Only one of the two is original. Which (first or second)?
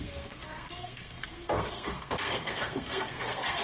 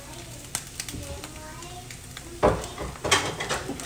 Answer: second